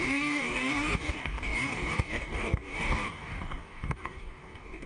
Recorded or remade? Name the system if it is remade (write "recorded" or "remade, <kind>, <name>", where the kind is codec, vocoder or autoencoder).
remade, codec, DAC